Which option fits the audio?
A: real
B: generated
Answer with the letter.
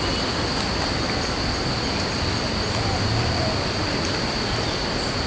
A